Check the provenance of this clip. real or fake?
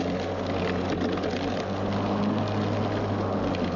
real